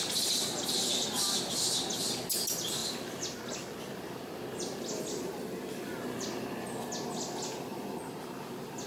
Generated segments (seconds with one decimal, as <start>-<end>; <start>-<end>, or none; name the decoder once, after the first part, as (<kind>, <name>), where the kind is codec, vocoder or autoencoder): none